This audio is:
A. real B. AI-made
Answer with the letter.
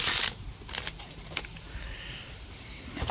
A